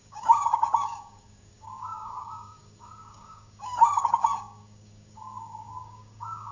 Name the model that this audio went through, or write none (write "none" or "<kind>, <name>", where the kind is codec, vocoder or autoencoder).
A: codec, DAC